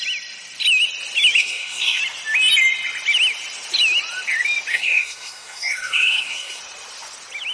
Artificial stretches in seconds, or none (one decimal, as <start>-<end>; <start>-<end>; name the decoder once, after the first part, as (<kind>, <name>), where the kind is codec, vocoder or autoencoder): 1.4-2.0 (codec, SNAC); 4.7-6.6